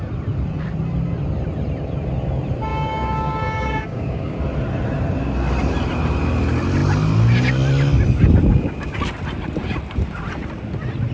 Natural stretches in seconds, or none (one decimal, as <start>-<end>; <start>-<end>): 0.0-2.7; 4.4-8.5; 9.0-11.1